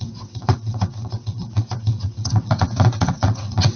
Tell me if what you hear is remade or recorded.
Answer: remade